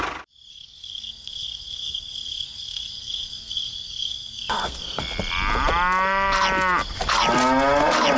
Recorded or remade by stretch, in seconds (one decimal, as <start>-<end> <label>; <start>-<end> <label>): 0.0-0.5 recorded; 0.5-5.0 remade; 5.0-8.2 recorded